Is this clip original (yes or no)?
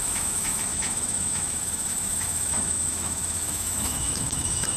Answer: no